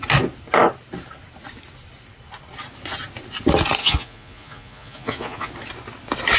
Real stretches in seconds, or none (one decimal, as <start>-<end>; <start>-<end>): 0.0-3.8; 5.5-6.4